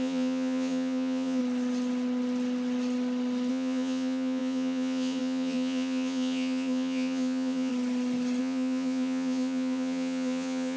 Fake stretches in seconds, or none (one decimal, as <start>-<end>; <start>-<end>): 0.0-1.4; 3.5-7.7; 8.4-10.8